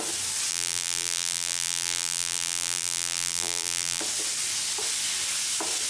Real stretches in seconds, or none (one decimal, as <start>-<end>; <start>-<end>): 0.0-0.5; 4.0-5.9